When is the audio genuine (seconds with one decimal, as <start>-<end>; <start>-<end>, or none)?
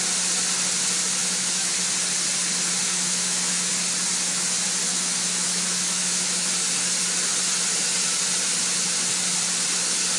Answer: 0.0-1.2; 1.7-2.9; 3.7-4.9; 6.5-10.2